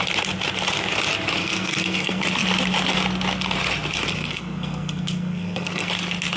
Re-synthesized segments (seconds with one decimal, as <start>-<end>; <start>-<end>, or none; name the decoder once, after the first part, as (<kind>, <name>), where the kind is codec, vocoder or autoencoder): 1.4-2.2 (codec, SNAC); 4.1-5.9